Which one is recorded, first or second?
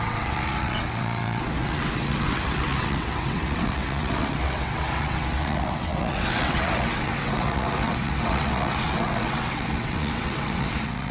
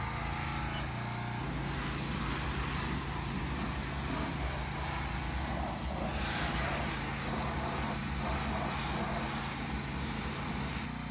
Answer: second